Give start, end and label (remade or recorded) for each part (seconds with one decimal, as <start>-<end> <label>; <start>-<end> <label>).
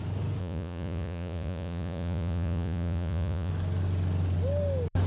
0.0-0.4 recorded; 0.4-3.5 remade; 3.5-5.1 recorded